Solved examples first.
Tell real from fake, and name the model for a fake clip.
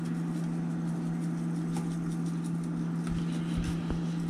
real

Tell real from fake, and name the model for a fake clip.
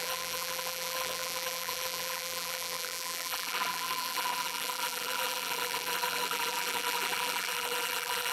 fake, vocoder, BigVGAN v2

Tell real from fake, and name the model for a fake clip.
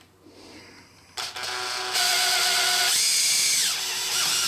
real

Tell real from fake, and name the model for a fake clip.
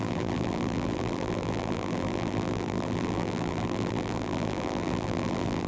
fake, vocoder, BigVGAN v2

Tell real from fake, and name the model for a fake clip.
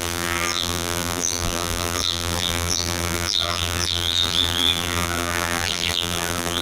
fake, vocoder, BigVGAN v2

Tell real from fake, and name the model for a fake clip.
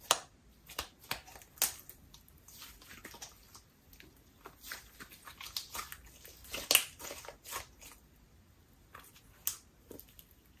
real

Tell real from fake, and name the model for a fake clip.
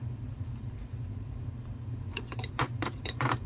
fake, vocoder, BigVGAN v2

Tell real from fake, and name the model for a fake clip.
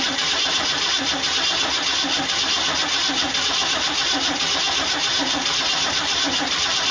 fake, vocoder, BigVGAN v2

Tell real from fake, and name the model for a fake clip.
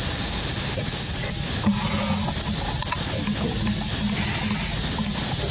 real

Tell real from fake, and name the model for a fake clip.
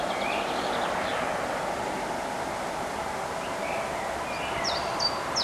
real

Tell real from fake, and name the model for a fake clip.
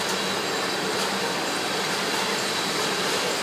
fake, vocoder, BigVGAN v2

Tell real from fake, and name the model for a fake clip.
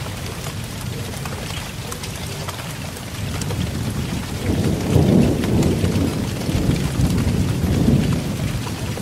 fake, vocoder, BigVGAN v2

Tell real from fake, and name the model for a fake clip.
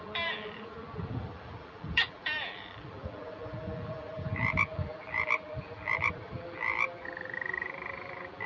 fake, vocoder, BigVGAN v2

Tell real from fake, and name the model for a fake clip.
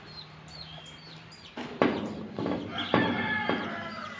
real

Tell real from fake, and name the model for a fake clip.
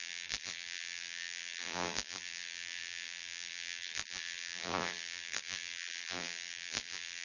fake, vocoder, BigVGAN v2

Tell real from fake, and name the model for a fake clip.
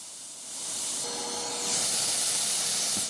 real